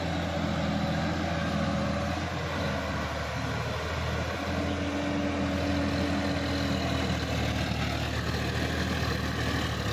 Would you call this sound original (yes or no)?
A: yes